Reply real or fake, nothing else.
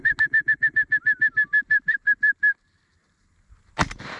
real